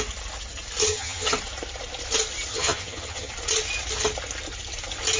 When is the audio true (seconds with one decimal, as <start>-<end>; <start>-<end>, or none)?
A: 0.0-0.8; 1.3-2.5; 3.3-5.2